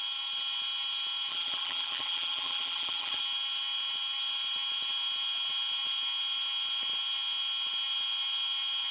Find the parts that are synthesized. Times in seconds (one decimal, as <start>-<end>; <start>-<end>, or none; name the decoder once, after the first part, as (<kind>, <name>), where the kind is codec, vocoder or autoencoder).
1.3-3.2 (vocoder, BigVGAN v2)